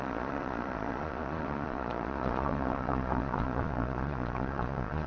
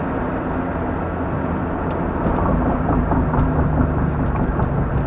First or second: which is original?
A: second